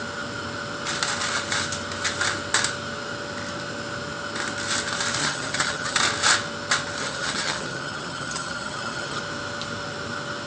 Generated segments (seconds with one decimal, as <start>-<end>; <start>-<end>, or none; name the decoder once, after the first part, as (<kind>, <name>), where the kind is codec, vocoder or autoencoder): 5.2-6.0 (vocoder, HiFi-GAN); 7.0-9.2